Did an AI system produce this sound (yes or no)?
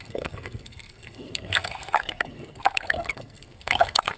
yes